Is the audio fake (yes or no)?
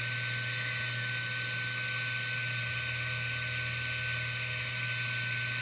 no